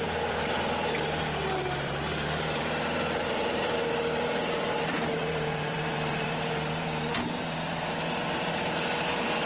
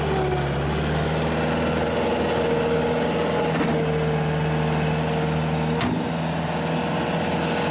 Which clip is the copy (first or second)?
first